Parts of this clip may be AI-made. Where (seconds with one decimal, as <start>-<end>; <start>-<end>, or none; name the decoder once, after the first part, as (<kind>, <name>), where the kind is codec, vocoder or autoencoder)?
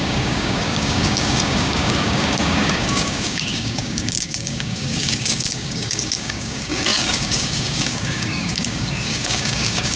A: 0.0-10.0 (codec, DAC)